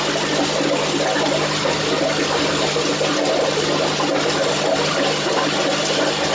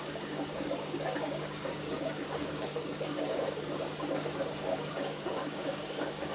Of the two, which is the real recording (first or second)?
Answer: first